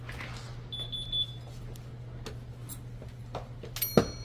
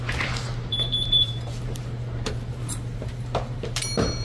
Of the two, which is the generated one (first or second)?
second